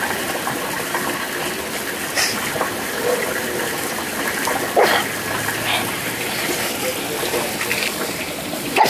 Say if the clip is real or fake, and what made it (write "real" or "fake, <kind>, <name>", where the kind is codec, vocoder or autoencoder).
real